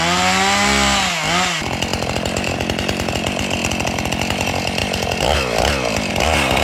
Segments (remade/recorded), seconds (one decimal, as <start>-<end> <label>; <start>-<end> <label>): 0.0-6.6 recorded